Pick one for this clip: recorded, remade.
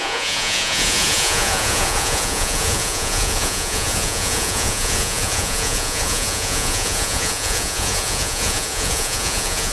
remade